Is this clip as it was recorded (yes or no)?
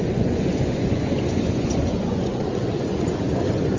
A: no